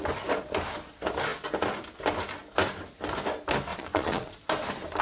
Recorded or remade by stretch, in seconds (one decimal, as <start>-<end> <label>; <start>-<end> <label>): 0.0-3.7 recorded; 3.7-4.5 remade; 4.5-5.0 recorded